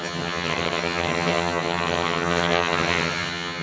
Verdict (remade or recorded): remade